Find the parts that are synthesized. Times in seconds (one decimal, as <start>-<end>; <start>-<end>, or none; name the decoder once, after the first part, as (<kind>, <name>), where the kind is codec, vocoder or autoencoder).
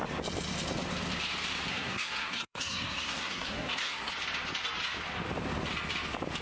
1.7-4.1 (codec, SNAC)